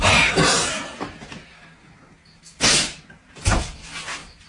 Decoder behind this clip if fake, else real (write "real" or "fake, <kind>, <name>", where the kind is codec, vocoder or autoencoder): real